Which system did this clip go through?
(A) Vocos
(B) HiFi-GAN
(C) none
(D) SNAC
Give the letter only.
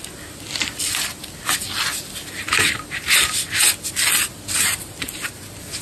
C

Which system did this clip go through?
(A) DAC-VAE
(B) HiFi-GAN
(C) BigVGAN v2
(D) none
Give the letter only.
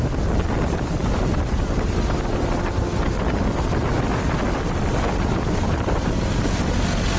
D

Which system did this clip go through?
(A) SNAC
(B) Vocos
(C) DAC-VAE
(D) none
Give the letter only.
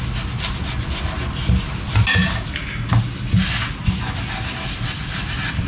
D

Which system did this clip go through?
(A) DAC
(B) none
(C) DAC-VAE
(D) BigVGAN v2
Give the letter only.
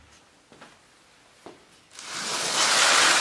B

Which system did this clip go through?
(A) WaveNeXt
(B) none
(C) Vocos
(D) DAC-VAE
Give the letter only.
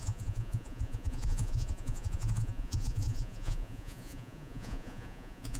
C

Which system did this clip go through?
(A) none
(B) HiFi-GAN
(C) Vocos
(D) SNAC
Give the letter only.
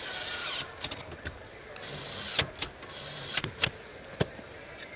A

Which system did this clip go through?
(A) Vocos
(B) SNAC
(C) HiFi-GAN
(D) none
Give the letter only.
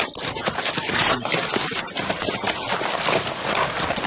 D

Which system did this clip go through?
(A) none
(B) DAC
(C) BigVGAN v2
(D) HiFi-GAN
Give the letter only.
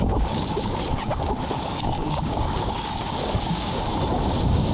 B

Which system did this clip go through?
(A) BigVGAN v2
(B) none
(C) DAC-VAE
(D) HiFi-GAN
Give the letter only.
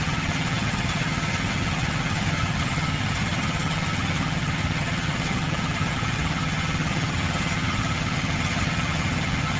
D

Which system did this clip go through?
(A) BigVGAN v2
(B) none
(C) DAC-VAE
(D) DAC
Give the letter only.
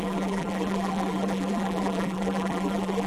A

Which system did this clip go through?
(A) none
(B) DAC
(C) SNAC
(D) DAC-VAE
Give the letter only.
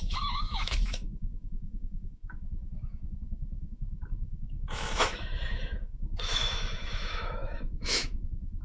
D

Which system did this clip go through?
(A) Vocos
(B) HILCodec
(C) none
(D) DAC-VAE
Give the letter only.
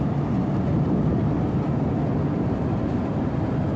C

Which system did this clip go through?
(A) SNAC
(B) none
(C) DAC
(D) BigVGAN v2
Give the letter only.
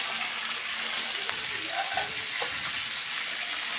B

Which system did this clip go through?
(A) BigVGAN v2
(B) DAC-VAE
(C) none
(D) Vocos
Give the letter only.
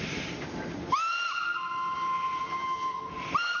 C